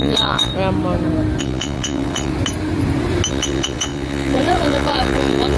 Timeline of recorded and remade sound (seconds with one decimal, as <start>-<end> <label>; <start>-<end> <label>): 0.0-0.5 remade; 0.5-1.4 recorded; 1.4-2.3 remade; 2.3-3.3 recorded; 3.3-5.6 remade

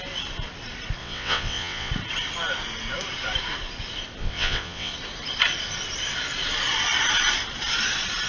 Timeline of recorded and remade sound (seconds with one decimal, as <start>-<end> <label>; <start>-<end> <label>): 0.0-1.0 recorded; 1.0-1.9 remade; 1.9-4.2 recorded; 4.2-4.9 remade; 4.9-8.3 recorded

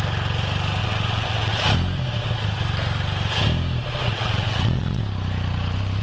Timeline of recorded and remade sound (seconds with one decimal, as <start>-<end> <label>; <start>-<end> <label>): 0.0-0.8 recorded; 0.8-1.5 remade; 1.5-4.1 recorded; 4.1-5.0 remade; 5.0-6.0 recorded

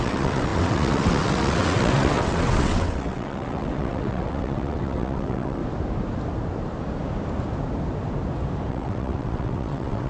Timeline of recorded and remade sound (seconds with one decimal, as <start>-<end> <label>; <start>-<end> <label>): 0.0-5.6 remade; 5.6-8.7 recorded; 8.7-10.1 remade

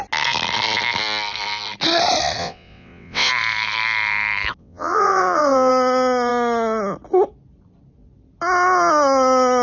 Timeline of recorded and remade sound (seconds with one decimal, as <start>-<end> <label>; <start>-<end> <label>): 0.0-2.4 recorded; 2.4-3.3 remade; 3.3-4.6 recorded; 4.6-5.7 remade; 5.7-9.6 recorded

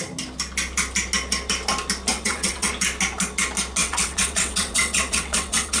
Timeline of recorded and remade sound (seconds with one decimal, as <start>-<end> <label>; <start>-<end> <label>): 0.0-2.1 recorded; 2.1-2.7 remade; 2.7-3.8 recorded; 3.8-5.8 remade